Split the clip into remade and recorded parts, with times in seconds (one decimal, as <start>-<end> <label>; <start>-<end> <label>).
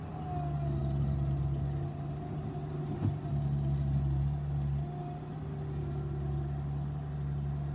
0.0-7.7 recorded